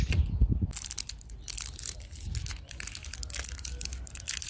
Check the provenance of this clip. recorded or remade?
recorded